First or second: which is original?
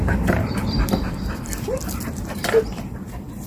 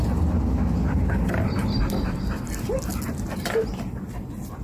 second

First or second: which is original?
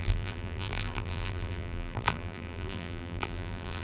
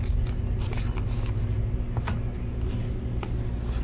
second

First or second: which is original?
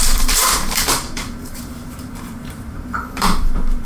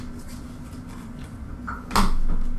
second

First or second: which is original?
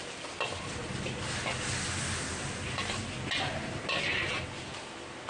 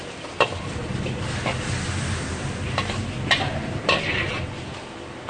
first